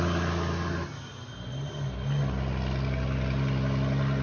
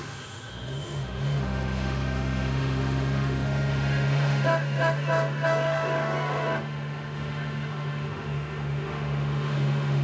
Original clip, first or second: first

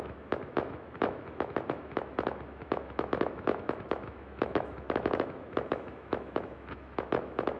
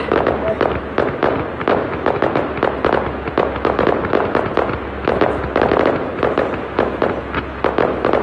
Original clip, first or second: second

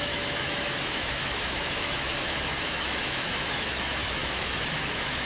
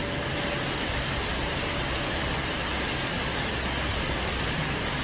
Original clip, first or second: second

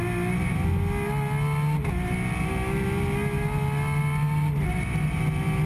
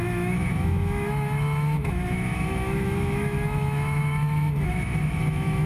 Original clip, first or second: first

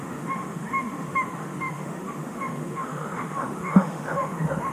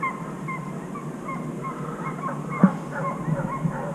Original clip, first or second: second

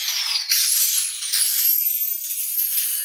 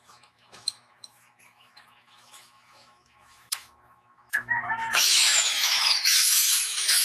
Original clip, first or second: first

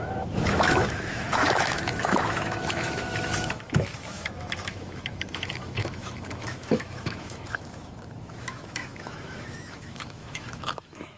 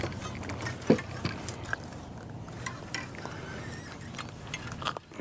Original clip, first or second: second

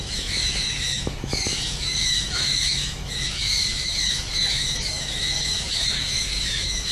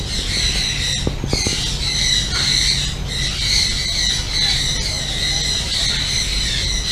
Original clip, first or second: second